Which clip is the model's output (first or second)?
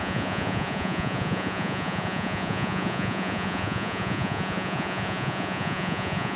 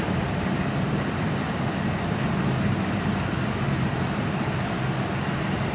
first